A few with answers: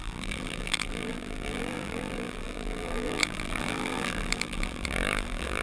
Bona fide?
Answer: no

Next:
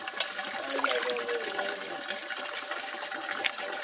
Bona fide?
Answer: yes